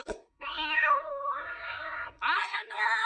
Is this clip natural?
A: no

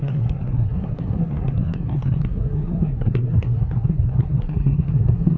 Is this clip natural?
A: no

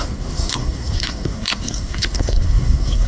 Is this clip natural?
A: no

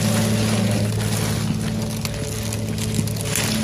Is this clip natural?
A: yes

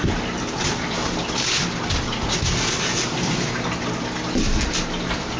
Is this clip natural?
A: yes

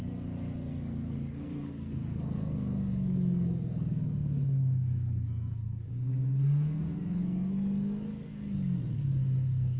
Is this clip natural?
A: no